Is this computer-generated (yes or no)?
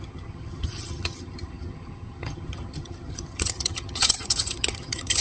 yes